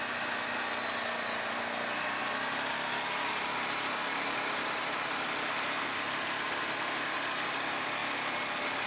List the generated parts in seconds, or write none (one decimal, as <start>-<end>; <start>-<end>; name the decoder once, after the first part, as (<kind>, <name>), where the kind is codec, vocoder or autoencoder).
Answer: none